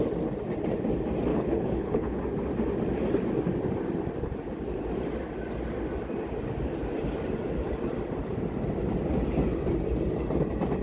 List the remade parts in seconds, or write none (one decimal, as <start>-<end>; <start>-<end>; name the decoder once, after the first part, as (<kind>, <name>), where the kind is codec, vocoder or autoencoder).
1.3-2.2 (codec, HILCodec)